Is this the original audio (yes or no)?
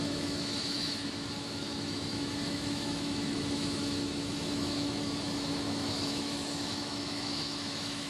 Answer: no